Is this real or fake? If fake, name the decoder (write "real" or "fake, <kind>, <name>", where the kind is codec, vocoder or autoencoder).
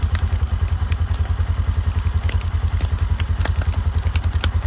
real